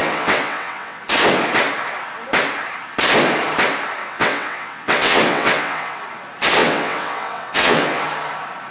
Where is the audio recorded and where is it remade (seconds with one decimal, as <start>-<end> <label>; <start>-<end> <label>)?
0.0-1.0 remade; 1.0-4.0 recorded; 4.0-6.0 remade; 6.0-6.6 recorded; 6.6-8.0 remade; 8.0-8.7 recorded